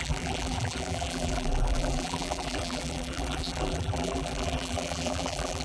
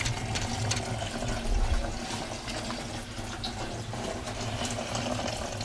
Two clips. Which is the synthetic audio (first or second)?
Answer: first